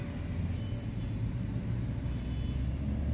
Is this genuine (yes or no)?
yes